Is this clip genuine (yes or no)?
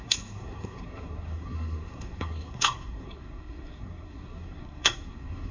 no